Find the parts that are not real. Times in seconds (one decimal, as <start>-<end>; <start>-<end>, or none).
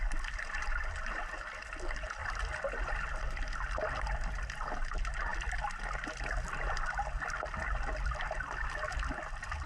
none